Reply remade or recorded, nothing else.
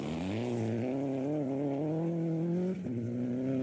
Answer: recorded